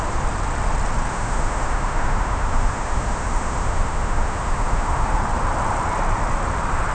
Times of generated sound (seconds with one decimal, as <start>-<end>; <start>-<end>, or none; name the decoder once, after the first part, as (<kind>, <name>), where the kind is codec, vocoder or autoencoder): 1.1-5.2 (autoencoder, DAC-VAE)